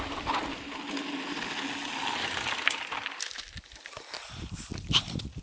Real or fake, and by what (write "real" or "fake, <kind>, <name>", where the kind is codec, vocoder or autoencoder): real